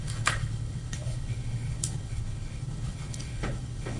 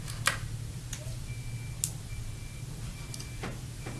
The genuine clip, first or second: second